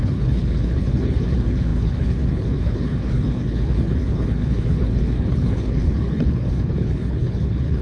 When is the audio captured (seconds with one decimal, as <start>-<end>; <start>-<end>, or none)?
none